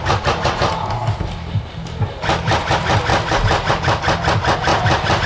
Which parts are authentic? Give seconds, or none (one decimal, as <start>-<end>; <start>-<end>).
0.0-3.1; 3.7-4.7